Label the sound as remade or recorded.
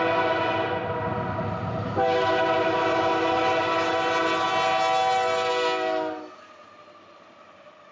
recorded